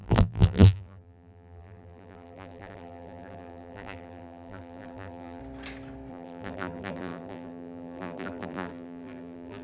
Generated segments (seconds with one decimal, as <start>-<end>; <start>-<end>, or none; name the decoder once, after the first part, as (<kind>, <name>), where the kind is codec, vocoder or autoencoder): 0.0-5.4 (vocoder, BigVGAN v2); 6.1-9.6